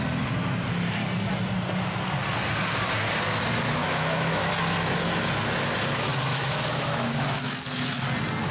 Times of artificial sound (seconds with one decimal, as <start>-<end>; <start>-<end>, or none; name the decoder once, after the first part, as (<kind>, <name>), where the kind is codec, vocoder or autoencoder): 3.8-4.5 (autoencoder, DAC-VAE); 6.3-8.0